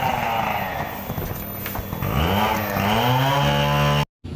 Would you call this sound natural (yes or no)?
yes